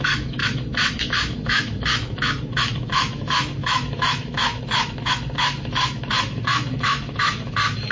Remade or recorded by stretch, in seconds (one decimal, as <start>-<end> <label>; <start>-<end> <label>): 0.0-7.9 remade